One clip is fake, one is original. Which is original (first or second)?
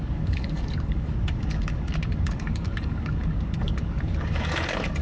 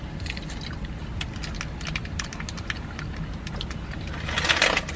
second